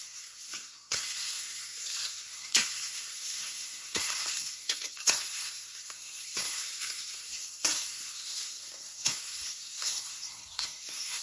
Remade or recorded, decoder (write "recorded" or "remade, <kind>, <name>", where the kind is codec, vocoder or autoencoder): remade, codec, SNAC